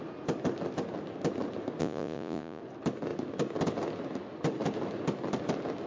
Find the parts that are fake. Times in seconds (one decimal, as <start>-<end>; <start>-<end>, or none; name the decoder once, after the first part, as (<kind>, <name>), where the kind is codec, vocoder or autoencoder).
1.8-2.6 (vocoder, Vocos)